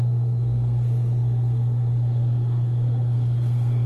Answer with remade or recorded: remade